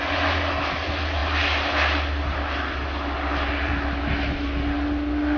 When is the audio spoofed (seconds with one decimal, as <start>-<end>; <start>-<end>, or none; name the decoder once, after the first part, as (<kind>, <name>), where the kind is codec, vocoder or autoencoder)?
none